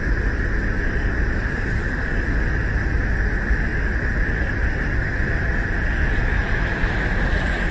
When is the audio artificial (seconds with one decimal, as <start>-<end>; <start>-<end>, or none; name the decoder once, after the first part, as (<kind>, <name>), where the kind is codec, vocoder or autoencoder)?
6.0-6.6 (vocoder, Vocos)